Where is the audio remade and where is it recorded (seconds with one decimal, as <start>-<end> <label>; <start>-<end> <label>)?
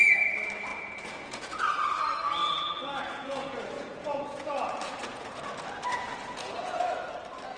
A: 0.0-0.7 recorded; 0.7-1.6 remade; 1.6-2.4 recorded; 2.4-5.3 remade; 5.3-5.9 recorded; 5.9-6.8 remade; 6.8-7.6 recorded